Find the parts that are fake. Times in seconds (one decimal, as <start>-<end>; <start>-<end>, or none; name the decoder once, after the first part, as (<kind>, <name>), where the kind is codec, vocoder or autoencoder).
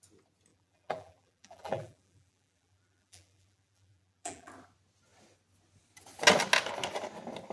0.5-4.5 (vocoder, BigVGAN v2)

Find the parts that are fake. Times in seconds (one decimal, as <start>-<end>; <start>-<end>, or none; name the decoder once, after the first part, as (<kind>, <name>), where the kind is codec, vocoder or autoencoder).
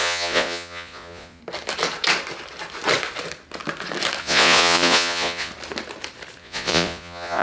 0.0-1.4 (vocoder, Vocos); 4.2-5.5; 6.4-7.4